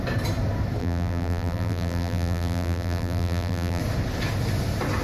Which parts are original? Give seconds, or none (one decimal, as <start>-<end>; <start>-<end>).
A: 0.0-0.8; 3.8-5.0